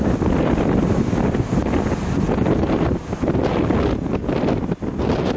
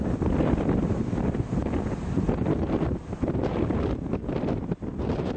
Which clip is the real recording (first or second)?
first